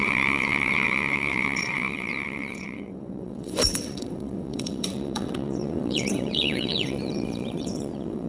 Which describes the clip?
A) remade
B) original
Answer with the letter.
A